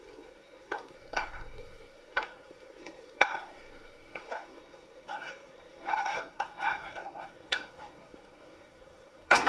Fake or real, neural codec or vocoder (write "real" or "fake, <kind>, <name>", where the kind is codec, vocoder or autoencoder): fake, codec, SNAC